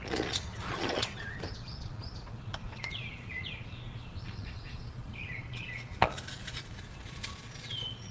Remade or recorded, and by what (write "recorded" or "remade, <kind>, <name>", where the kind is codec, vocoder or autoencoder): remade, vocoder, Vocos